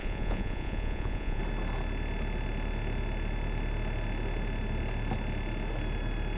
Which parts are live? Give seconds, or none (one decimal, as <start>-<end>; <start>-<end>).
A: 1.4-6.4